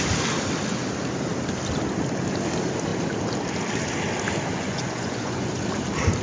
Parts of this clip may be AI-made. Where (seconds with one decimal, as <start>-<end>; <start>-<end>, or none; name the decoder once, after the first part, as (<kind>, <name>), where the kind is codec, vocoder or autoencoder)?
4.5-5.5 (vocoder, Vocos)